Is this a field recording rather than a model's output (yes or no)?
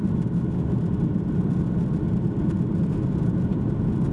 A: yes